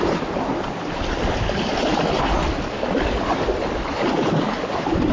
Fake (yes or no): no